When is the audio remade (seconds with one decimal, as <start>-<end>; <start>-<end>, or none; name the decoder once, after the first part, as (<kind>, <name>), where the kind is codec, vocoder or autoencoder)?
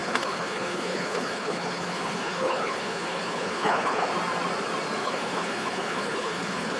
0.0-4.1 (codec, HILCodec); 5.0-6.8